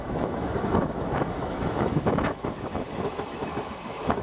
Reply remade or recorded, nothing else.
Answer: remade